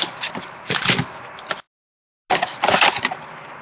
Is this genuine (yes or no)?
yes